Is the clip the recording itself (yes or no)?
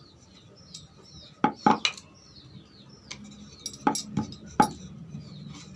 yes